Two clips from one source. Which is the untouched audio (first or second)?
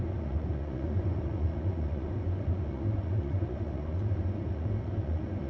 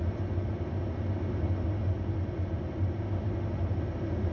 second